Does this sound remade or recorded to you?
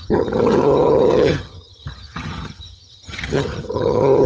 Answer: remade